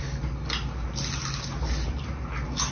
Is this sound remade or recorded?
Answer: recorded